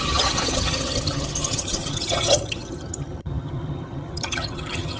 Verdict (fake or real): fake